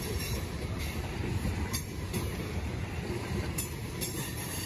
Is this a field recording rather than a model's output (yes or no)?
no